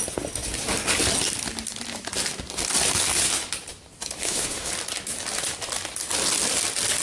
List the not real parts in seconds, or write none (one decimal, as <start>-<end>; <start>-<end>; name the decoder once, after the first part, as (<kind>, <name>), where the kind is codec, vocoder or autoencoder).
4.2-4.7 (autoencoder, DAC-VAE)